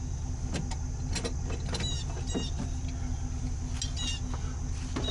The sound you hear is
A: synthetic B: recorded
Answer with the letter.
B